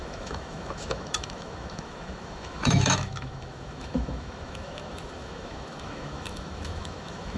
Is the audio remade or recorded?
remade